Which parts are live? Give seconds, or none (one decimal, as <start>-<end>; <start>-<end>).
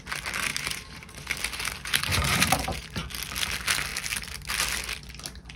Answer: 0.0-0.5; 1.3-2.1; 3.1-5.6